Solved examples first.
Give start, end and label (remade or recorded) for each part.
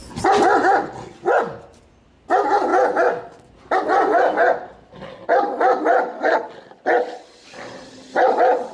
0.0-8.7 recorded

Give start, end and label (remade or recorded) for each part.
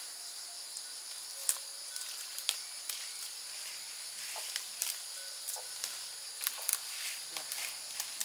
0.0-8.2 recorded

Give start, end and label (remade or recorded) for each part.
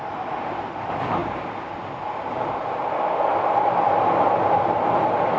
0.0-5.4 recorded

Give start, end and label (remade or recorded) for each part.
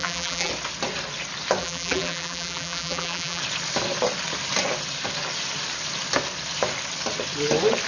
0.0-0.5 remade; 0.5-1.6 recorded; 1.6-3.4 remade; 3.4-7.9 recorded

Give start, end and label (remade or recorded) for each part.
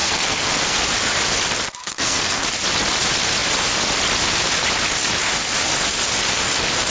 0.0-0.8 remade; 0.8-1.8 recorded; 1.8-2.4 remade; 2.4-6.9 recorded